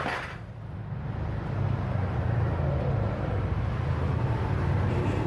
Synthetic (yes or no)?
no